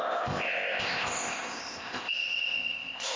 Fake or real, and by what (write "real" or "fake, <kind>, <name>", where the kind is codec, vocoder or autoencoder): fake, codec, ZipCodec